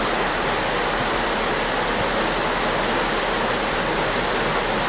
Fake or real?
real